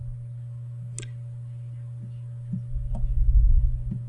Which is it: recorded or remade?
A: recorded